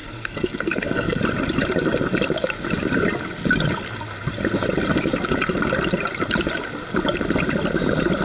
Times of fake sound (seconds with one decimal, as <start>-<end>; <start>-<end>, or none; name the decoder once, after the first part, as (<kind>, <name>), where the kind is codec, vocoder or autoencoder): 0.0-1.2 (codec, SNAC)